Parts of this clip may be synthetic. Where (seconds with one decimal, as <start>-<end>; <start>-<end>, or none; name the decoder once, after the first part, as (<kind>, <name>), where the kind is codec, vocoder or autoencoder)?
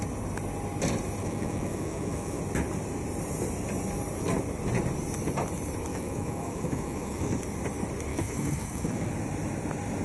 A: 1.2-2.4 (autoencoder, DAC-VAE); 5.9-7.3; 8.1-9.1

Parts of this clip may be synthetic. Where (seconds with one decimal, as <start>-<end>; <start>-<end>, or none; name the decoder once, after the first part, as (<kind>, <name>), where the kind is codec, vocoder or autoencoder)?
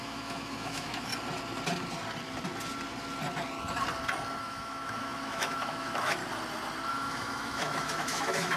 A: 0.0-1.1 (autoencoder, DAC-VAE); 4.4-6.2; 6.9-8.6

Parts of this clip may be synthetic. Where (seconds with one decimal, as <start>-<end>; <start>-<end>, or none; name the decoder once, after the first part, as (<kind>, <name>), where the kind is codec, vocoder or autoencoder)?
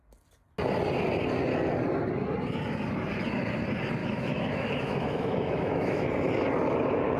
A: 4.0-6.1 (autoencoder, DAC-VAE)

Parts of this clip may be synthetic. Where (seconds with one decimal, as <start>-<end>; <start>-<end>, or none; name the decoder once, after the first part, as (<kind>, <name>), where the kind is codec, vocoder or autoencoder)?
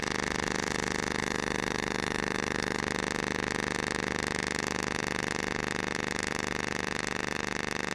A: 1.2-2.8 (autoencoder, DAC-VAE)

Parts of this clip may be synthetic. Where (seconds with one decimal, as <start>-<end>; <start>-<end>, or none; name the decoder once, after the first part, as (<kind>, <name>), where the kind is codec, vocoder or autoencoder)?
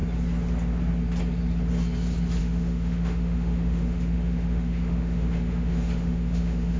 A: 2.4-6.8 (autoencoder, DAC-VAE)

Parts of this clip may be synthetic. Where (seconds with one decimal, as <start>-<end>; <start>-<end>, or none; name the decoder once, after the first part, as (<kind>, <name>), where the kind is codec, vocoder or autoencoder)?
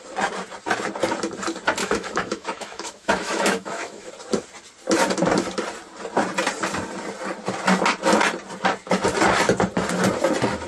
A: 1.8-4.1 (autoencoder, DAC-VAE)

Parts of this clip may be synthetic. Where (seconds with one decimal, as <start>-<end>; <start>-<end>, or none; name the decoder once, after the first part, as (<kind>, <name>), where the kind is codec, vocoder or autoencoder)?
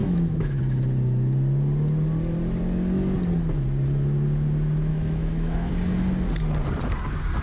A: 0.0-0.6 (autoencoder, DAC-VAE); 4.9-5.7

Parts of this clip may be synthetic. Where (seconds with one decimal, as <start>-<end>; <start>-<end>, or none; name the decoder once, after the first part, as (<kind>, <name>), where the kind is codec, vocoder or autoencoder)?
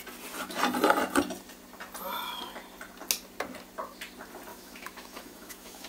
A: 4.5-5.9 (autoencoder, DAC-VAE)